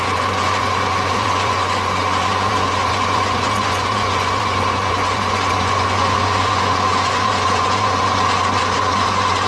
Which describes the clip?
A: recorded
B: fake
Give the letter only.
B